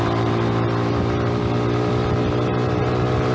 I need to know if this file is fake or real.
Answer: real